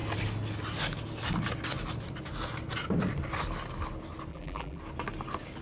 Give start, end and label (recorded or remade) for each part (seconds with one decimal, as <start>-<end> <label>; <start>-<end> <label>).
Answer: 0.0-4.3 recorded; 4.3-4.8 remade; 4.8-5.6 recorded